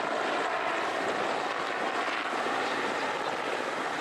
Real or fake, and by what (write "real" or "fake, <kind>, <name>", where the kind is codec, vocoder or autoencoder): real